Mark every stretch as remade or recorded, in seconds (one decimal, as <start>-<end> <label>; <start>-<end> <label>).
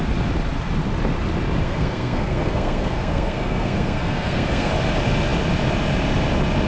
0.0-1.6 recorded; 1.6-4.7 remade; 4.7-6.7 recorded